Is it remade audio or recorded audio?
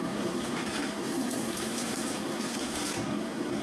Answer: remade